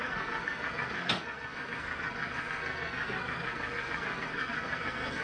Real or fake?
fake